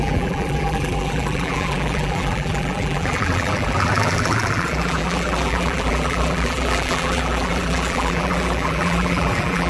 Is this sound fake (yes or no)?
yes